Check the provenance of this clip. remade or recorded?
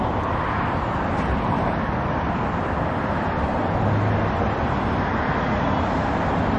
recorded